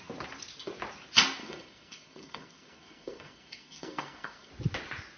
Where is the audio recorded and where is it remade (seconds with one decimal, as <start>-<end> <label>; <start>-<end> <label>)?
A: 0.0-1.4 recorded; 1.4-4.5 remade; 4.5-5.2 recorded